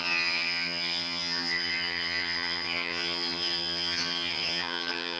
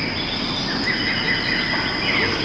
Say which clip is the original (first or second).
second